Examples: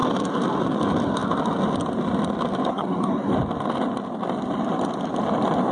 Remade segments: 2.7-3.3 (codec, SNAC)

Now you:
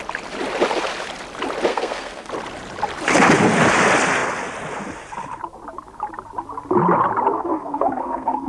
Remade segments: 1.7-2.3 (codec, SNAC); 7.3-8.5